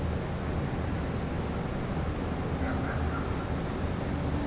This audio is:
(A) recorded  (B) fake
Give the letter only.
A